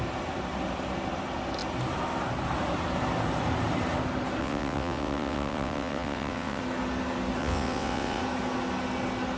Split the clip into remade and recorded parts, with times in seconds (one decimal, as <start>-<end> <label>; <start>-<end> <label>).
0.0-4.4 recorded; 4.4-6.6 remade; 6.6-7.4 recorded; 7.4-8.2 remade; 8.2-9.4 recorded